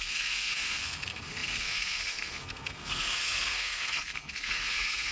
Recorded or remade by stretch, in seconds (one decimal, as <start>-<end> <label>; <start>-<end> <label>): 0.0-5.1 remade